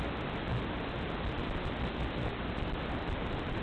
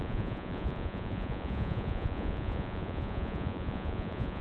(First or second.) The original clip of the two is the first